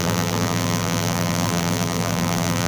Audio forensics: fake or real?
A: fake